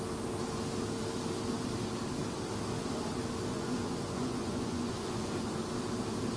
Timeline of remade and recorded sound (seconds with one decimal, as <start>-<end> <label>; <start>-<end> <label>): 0.0-3.5 recorded; 3.5-5.3 remade; 5.3-6.4 recorded

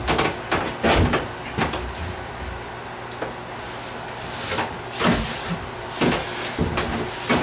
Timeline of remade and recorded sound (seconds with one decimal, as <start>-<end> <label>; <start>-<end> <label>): 0.0-7.4 recorded

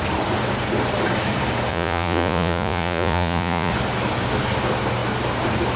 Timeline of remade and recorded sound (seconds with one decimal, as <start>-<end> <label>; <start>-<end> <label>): 0.0-1.7 recorded; 1.7-3.7 remade; 3.7-5.8 recorded

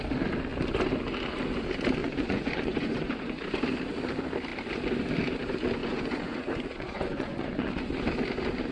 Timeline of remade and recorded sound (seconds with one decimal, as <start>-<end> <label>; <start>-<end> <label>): 0.0-2.0 recorded; 2.0-3.4 remade; 3.4-5.8 recorded; 5.8-8.1 remade; 8.1-8.7 recorded

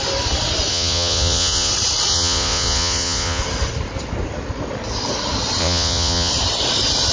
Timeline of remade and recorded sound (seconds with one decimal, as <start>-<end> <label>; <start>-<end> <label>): 0.0-0.7 recorded; 0.7-1.7 remade; 1.7-2.1 recorded; 2.1-3.4 remade; 3.4-5.6 recorded; 5.6-6.3 remade; 6.3-7.1 recorded

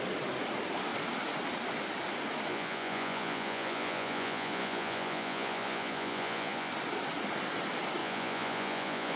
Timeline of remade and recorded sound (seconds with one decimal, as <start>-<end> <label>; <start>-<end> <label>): 0.0-2.5 recorded; 2.5-6.7 remade; 6.7-8.0 recorded; 8.0-9.2 remade